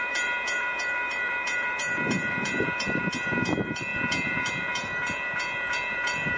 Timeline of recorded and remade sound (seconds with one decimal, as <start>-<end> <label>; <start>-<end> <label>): 0.0-6.4 remade